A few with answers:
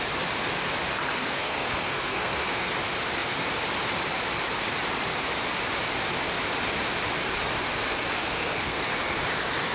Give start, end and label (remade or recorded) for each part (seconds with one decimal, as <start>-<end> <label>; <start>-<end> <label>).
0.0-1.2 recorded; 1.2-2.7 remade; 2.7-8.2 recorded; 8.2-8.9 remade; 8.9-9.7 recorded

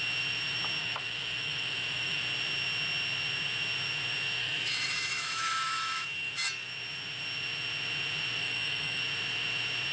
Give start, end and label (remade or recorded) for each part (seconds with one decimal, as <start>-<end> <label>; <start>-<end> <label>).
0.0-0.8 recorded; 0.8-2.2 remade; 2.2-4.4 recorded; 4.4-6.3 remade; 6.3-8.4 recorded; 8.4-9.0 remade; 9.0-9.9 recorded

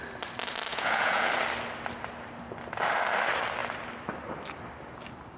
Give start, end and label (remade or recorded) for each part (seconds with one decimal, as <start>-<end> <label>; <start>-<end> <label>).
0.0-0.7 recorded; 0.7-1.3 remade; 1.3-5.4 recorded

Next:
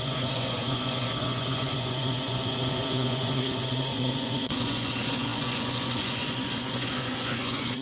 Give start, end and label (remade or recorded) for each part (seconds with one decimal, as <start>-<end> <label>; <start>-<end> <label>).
0.0-7.8 remade

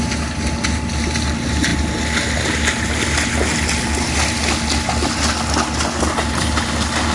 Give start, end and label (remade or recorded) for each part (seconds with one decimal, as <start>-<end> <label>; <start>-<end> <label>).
0.0-7.1 recorded